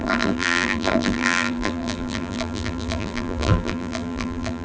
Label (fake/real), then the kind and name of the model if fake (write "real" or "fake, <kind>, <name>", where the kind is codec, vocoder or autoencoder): fake, vocoder, BigVGAN v2